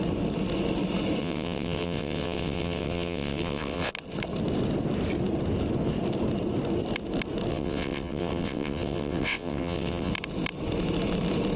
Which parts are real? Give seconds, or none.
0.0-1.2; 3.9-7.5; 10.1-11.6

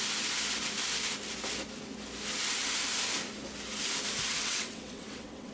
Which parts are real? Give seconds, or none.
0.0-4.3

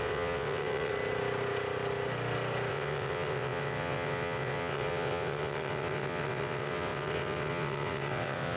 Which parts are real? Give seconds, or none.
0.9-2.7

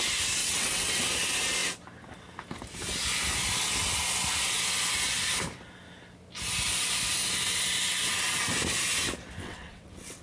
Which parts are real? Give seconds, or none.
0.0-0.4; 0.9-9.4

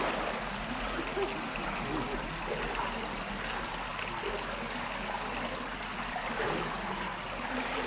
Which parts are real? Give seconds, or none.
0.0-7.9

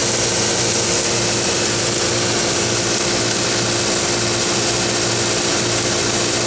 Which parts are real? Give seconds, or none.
0.0-6.5

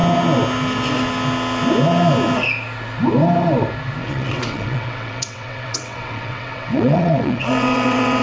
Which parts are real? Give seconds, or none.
0.0-4.0